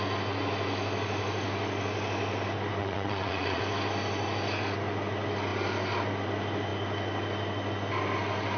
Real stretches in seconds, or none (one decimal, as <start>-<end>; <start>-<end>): 0.0-2.8; 3.6-8.6